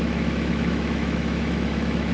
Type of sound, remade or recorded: remade